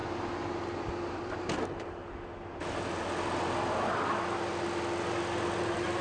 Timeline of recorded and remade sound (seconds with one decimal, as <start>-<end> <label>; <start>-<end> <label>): 0.0-1.1 recorded; 1.1-2.0 remade; 2.0-5.6 recorded; 5.6-6.0 remade